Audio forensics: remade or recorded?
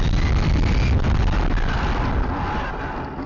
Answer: recorded